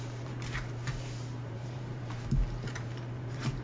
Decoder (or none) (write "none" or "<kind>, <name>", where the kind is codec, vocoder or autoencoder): vocoder, BigVGAN v2